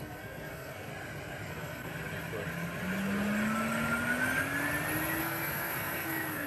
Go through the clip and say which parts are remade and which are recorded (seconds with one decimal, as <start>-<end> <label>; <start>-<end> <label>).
0.0-0.9 remade; 0.9-1.5 recorded; 1.5-1.9 remade; 1.9-5.2 recorded; 5.2-6.5 remade